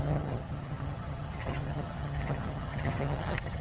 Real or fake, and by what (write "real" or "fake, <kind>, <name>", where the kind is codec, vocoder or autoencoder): fake, vocoder, HiFi-GAN